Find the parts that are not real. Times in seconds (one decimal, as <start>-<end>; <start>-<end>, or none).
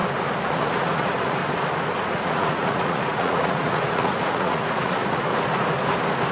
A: 0.5-1.4; 2.0-5.3